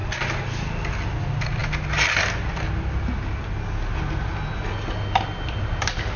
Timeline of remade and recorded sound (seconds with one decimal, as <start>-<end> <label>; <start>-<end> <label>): 0.0-6.2 recorded